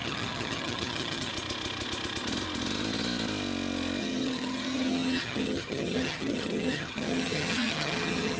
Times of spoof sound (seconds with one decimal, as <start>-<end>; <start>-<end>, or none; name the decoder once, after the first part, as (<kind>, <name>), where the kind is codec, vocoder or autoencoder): 0.0-1.3 (vocoder, HiFi-GAN); 4.0-8.4